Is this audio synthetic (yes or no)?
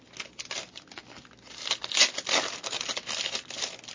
no